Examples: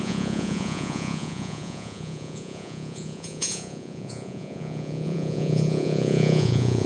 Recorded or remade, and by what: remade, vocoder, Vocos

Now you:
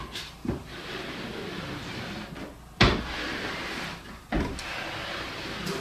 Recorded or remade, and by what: recorded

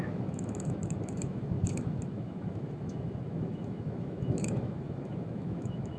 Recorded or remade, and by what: remade, autoencoder, DAC-VAE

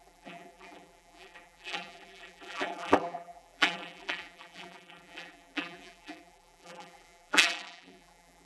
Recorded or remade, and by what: remade, vocoder, BigVGAN v2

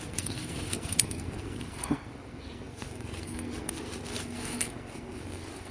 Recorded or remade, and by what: remade, codec, SNAC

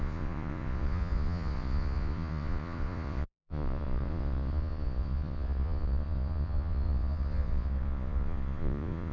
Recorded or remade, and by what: remade, vocoder, Vocos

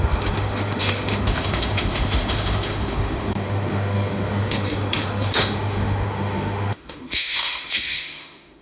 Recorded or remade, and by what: remade, autoencoder, DAC-VAE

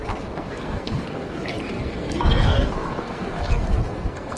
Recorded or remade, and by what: remade, codec, SNAC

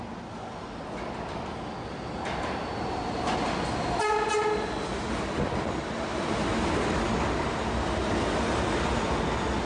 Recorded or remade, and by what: recorded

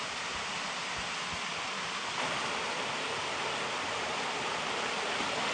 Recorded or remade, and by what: recorded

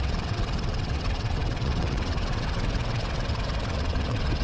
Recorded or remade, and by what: remade, vocoder, WaveNeXt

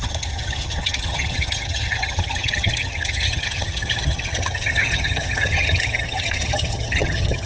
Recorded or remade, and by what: remade, vocoder, HiFi-GAN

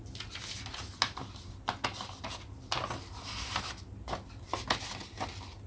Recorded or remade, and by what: recorded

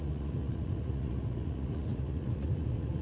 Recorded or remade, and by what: remade, vocoder, Vocos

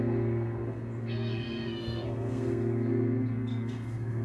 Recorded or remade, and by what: remade, codec, SNAC